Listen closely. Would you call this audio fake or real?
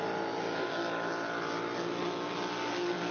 real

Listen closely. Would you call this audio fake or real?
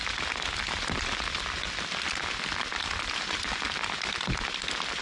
real